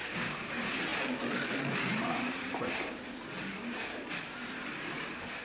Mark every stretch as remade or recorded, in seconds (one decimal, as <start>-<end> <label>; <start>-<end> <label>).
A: 0.0-0.5 remade; 0.5-5.4 recorded